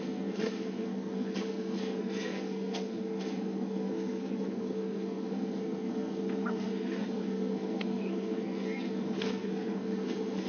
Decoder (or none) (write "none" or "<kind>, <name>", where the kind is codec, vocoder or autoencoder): codec, SNAC